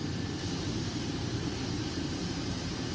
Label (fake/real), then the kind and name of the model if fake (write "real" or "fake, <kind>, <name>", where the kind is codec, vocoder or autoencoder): fake, vocoder, BigVGAN v2